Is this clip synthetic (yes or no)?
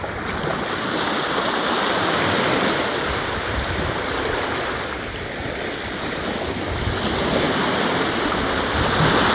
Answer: no